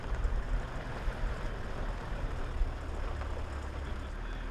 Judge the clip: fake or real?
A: fake